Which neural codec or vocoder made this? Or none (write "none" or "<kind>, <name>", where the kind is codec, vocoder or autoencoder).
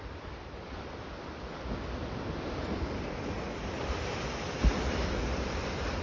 vocoder, BigVGAN v2